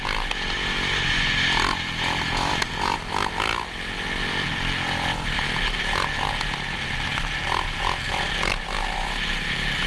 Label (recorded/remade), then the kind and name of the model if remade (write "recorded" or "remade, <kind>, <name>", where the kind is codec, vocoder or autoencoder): recorded